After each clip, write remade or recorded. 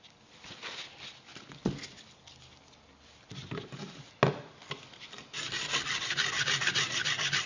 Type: recorded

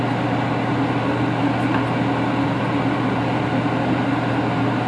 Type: recorded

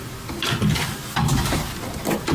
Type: recorded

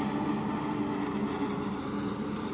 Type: recorded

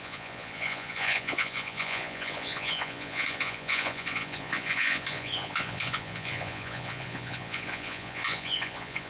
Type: remade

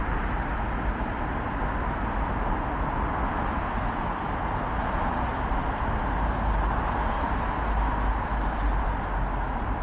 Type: recorded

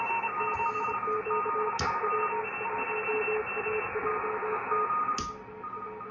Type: recorded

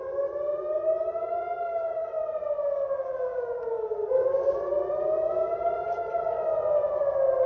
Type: recorded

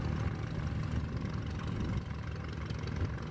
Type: recorded